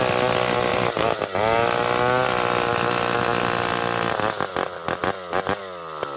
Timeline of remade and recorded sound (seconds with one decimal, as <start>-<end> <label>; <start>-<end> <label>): 0.0-0.7 recorded; 0.7-1.2 remade; 1.2-6.2 recorded